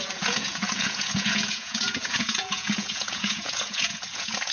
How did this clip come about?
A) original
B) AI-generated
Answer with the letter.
B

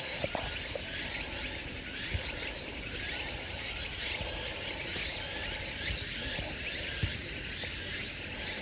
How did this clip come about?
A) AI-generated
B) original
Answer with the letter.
B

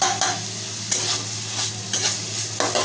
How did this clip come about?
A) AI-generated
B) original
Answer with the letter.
B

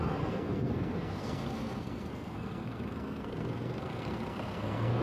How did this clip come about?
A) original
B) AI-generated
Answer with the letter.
B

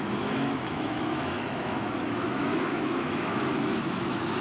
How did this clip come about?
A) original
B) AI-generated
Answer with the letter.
B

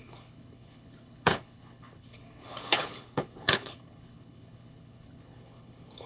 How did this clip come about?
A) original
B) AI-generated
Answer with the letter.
B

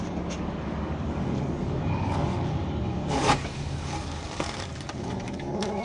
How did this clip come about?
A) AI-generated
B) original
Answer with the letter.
A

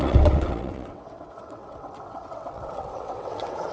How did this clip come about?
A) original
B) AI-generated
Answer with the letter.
B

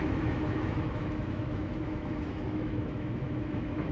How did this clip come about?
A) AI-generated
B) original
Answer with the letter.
A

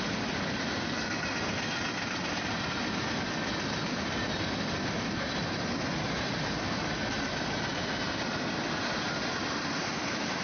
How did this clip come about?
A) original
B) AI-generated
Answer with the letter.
A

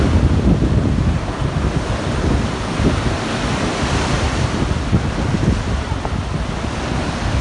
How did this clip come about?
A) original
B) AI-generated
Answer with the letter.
A